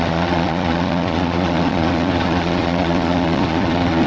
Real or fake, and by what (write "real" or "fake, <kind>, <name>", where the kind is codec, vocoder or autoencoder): fake, vocoder, Vocos